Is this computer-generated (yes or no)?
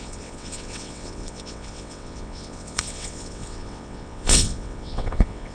yes